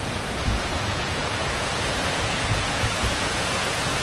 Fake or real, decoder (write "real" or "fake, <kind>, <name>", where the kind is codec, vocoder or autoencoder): fake, vocoder, Vocos